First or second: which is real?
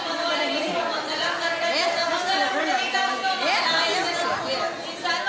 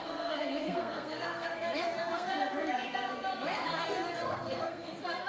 first